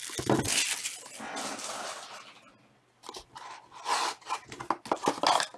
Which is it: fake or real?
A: real